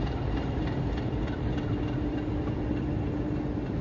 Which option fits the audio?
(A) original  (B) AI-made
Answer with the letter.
A